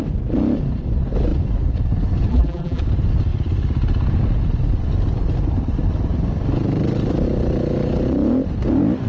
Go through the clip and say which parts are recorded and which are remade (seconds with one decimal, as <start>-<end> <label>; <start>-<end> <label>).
0.0-2.3 recorded; 2.3-2.8 remade; 2.8-9.1 recorded